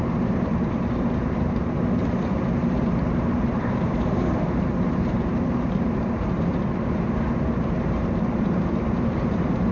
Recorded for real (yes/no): no